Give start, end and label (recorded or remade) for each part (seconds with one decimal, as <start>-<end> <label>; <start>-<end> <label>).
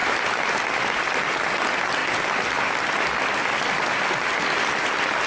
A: 0.0-5.3 recorded